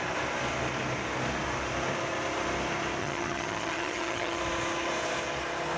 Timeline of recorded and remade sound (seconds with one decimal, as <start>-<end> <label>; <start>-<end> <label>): 0.0-3.0 recorded; 3.0-4.4 remade; 4.4-5.8 recorded